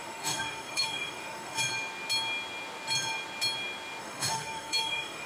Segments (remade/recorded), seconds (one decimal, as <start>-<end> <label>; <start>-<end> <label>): 0.0-1.6 remade; 1.6-4.0 recorded; 4.0-5.3 remade